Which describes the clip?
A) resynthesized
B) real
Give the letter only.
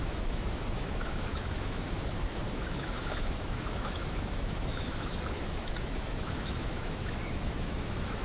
A